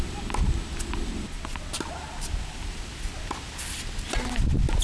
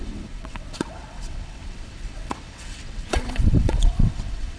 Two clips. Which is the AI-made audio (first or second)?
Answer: second